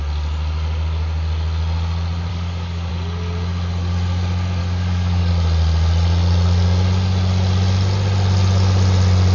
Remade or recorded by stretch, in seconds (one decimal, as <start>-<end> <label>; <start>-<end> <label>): 0.0-2.3 recorded; 2.3-2.9 remade; 2.9-4.6 recorded; 4.6-5.3 remade; 5.3-9.3 recorded